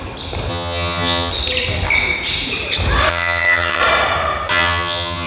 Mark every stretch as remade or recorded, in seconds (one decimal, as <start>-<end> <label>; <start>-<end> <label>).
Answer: 0.0-0.5 recorded; 0.5-1.3 remade; 1.3-3.1 recorded; 3.1-3.8 remade; 3.8-4.5 recorded; 4.5-5.3 remade